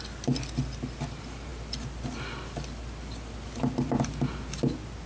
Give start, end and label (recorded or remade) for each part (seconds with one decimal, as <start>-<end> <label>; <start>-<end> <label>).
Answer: 0.0-5.1 recorded